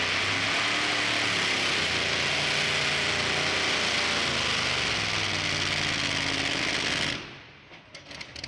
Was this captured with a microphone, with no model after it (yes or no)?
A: yes